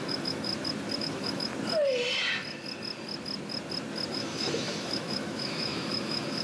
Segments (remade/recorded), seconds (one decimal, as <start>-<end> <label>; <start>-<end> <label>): 0.0-0.5 remade; 0.5-1.0 recorded; 1.0-1.5 remade; 1.5-4.1 recorded; 4.1-6.4 remade